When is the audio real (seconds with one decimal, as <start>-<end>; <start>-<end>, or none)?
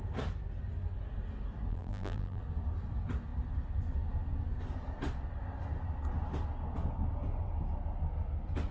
0.0-1.7; 2.4-8.7